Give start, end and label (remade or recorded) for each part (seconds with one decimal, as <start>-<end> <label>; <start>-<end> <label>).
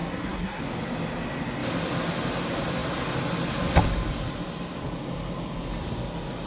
0.0-0.6 remade; 0.6-6.5 recorded